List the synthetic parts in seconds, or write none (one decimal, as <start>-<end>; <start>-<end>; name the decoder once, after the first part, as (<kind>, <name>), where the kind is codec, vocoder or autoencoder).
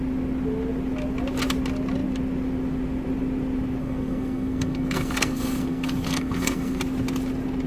3.8-6.8 (codec, SNAC)